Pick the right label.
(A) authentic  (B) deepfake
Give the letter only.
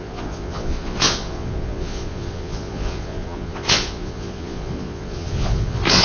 B